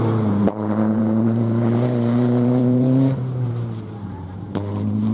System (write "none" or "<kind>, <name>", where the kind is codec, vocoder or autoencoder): vocoder, BigVGAN v2